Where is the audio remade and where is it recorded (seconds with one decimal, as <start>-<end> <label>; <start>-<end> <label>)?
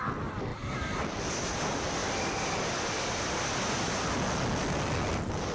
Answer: 0.0-0.5 recorded; 0.5-1.3 remade; 1.3-5.5 recorded